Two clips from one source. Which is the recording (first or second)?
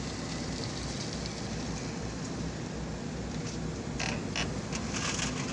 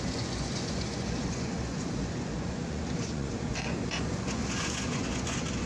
first